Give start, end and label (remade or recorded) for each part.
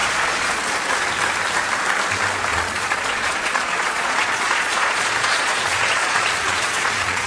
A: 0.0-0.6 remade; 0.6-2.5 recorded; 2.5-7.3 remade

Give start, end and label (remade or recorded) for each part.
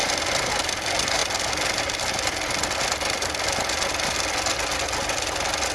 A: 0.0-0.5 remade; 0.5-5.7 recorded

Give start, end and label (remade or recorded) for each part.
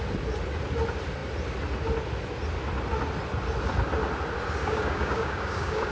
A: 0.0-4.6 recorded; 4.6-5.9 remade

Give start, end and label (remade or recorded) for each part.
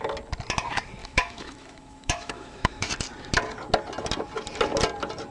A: 0.0-1.0 recorded; 1.0-2.9 remade; 2.9-5.3 recorded